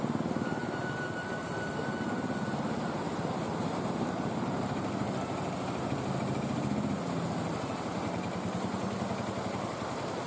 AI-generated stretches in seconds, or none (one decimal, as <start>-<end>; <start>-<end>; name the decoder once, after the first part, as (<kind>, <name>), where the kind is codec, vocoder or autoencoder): none